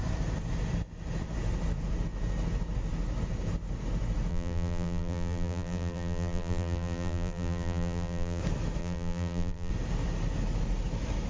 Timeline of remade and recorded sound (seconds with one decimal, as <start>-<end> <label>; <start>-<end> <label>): 0.0-4.3 recorded; 4.3-8.4 remade; 8.4-8.8 recorded; 8.8-9.7 remade; 9.7-11.3 recorded